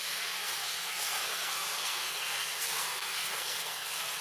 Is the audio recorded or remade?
remade